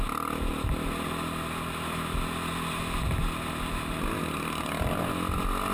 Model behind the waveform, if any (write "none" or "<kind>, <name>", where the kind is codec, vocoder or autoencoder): none